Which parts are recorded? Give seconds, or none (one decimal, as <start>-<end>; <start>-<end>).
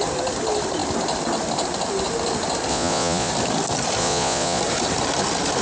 0.0-2.7; 3.3-4.0; 4.6-5.6